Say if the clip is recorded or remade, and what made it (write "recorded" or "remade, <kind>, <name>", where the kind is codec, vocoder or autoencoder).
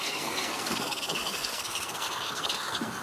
remade, codec, SNAC